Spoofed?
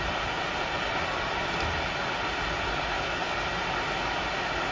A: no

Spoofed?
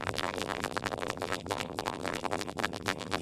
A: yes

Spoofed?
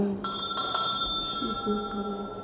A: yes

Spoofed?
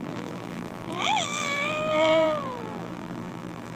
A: yes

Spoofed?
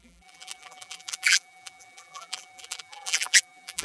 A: yes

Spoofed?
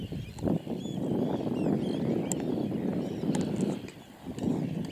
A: no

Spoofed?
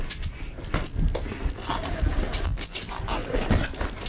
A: no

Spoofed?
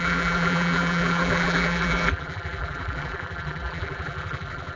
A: yes